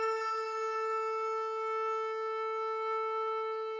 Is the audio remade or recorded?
recorded